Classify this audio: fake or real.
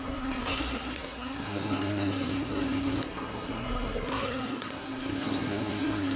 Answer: fake